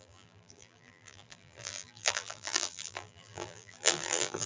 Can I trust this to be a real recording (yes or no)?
no